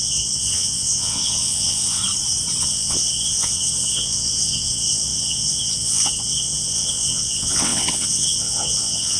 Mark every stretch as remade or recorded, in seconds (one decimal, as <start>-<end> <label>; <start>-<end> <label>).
0.0-2.0 remade; 2.0-2.6 recorded; 2.6-9.2 remade